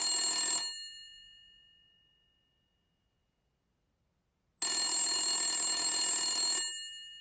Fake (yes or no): no